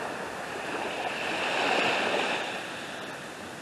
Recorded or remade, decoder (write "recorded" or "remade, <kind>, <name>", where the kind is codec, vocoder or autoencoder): recorded